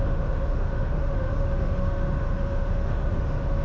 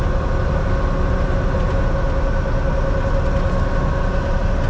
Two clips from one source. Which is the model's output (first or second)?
first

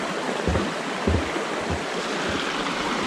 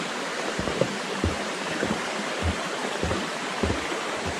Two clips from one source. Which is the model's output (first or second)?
second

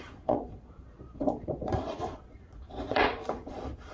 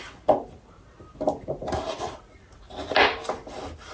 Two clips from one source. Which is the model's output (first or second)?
first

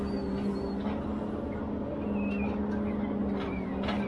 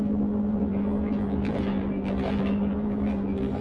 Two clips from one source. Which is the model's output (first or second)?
second